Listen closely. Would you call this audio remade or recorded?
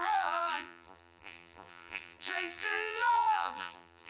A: remade